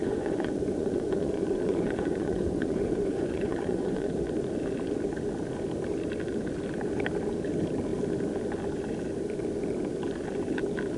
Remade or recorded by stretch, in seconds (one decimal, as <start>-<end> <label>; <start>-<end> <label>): 0.0-4.1 remade; 4.1-11.0 recorded